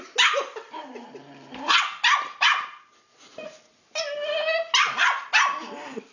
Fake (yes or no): no